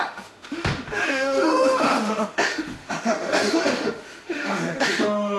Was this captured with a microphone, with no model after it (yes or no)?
no